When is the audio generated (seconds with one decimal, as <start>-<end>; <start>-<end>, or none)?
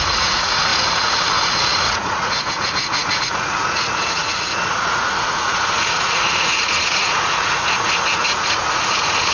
0.0-9.3